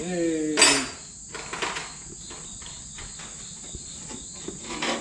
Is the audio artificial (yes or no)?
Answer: no